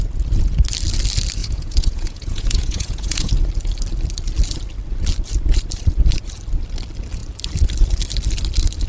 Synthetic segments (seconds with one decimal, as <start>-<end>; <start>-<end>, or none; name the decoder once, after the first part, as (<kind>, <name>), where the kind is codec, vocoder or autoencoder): 1.4-3.3 (vocoder, Vocos)